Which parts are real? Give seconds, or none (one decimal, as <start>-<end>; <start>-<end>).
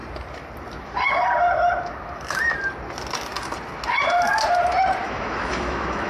0.0-5.0